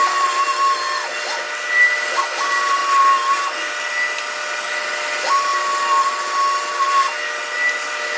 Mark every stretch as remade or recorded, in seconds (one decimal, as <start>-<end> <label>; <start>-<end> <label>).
0.0-8.2 recorded